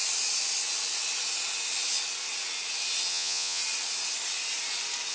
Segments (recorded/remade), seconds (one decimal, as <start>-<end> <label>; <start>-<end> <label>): 0.0-3.1 recorded; 3.1-3.6 remade; 3.6-5.1 recorded